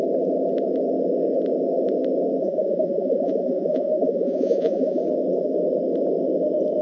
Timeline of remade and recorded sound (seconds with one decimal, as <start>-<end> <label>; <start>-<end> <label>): 0.0-2.4 recorded; 2.4-5.0 remade; 5.0-6.8 recorded